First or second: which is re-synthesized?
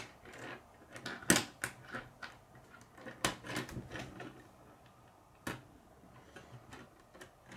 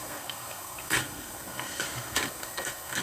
second